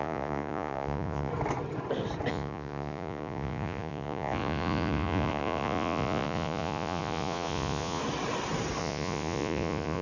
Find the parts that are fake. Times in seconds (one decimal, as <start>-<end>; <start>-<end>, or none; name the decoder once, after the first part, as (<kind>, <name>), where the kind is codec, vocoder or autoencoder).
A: 0.0-1.3 (vocoder, Vocos); 2.3-8.0; 8.8-10.0